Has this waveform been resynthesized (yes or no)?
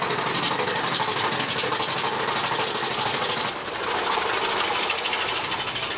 no